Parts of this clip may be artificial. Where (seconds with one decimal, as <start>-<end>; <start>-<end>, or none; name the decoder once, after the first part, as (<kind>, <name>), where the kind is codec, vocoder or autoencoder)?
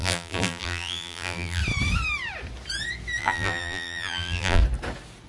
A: 0.0-1.6 (vocoder, BigVGAN v2); 3.2-4.6